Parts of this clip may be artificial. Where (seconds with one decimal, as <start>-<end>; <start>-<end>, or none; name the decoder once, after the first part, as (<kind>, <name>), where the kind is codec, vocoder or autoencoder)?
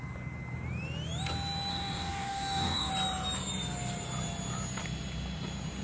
1.7-2.9 (codec, DAC)